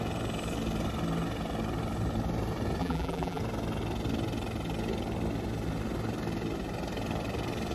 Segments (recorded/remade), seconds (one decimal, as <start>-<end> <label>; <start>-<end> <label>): 0.0-2.8 recorded; 2.8-3.4 remade; 3.4-7.7 recorded